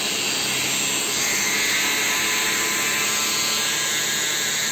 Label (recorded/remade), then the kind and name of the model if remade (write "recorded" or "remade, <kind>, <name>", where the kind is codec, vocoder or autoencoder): recorded